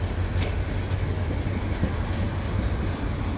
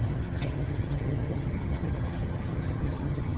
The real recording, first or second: first